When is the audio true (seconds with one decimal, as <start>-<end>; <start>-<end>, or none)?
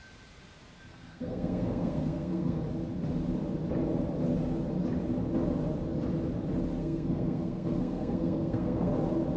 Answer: 0.0-0.9; 2.6-6.8; 8.9-9.4